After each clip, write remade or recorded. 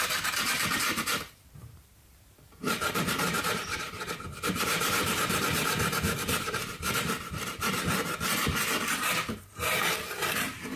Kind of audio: remade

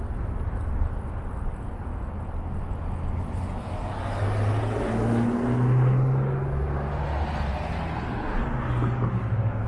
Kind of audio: recorded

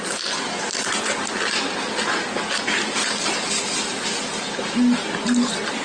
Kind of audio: recorded